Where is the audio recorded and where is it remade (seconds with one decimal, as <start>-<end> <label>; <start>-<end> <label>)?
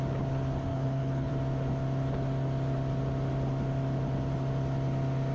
0.0-0.7 recorded; 0.7-1.3 remade; 1.3-5.3 recorded